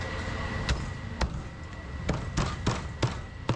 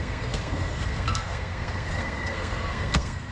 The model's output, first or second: second